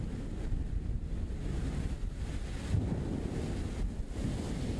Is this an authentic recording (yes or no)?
yes